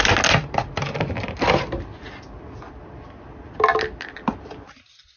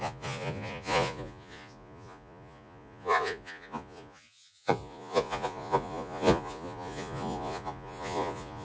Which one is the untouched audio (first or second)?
first